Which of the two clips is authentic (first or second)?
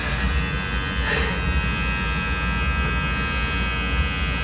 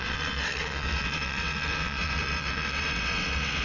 first